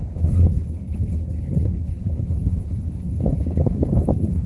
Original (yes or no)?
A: no